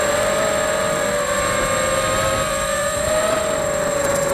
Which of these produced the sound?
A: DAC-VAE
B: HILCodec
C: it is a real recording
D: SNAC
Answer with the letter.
C